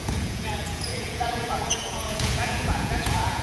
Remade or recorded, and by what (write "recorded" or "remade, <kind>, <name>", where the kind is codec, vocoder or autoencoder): remade, vocoder, Vocos